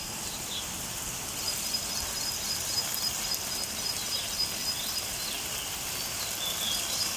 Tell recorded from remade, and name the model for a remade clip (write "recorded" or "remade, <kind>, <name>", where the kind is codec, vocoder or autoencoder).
recorded